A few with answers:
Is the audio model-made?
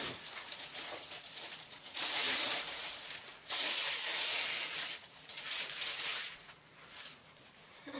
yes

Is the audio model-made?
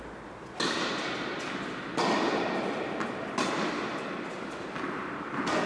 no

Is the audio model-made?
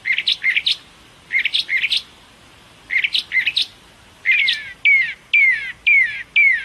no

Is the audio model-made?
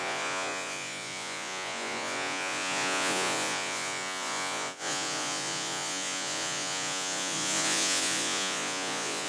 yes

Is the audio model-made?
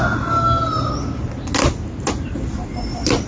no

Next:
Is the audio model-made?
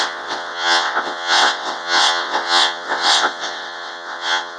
yes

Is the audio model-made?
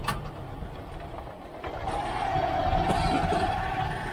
no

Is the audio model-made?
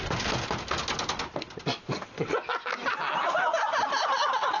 no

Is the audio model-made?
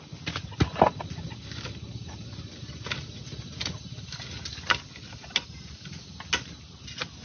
no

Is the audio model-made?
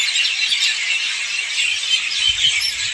no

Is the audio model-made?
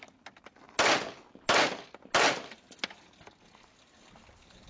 no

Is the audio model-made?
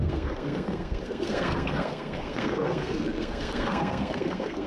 yes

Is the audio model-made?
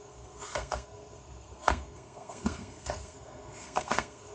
yes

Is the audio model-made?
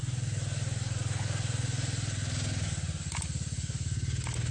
no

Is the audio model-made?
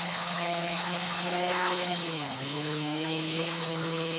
yes